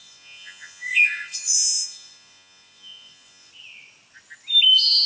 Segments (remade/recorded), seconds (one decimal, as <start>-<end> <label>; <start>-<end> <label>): 0.0-3.5 remade; 3.5-5.1 recorded